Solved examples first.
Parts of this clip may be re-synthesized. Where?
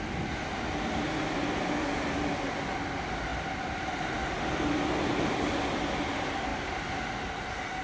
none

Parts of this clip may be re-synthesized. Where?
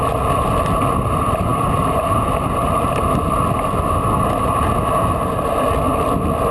none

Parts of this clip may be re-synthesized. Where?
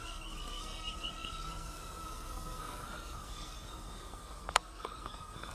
0.0-5.5 (codec, SNAC)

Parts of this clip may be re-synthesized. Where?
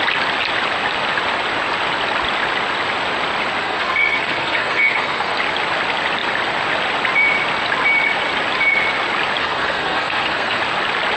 3.6-5.4 (codec, SNAC); 9.4-10.6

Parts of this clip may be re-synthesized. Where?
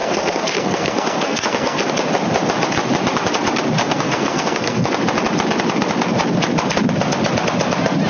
0.0-1.9 (codec, SNAC); 3.8-4.9